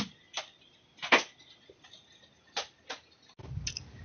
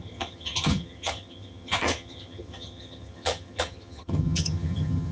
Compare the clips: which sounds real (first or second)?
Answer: first